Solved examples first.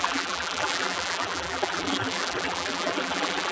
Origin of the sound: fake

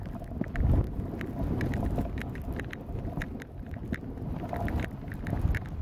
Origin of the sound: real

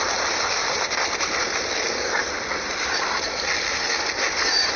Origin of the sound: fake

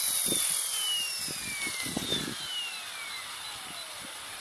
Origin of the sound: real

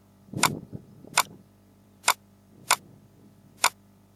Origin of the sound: fake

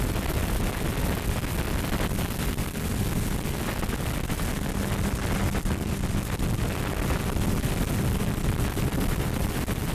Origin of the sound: real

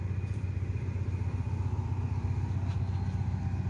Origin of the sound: fake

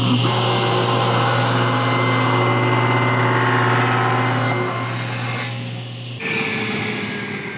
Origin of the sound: real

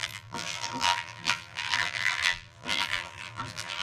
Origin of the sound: fake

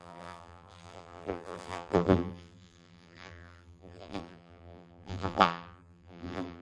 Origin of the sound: fake